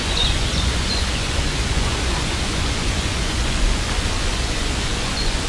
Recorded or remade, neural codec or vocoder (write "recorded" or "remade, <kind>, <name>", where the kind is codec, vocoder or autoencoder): remade, vocoder, Vocos